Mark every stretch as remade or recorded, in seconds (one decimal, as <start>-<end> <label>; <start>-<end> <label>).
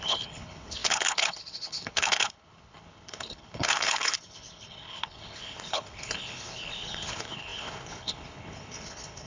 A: 0.0-9.3 remade